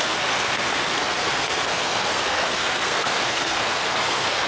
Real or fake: fake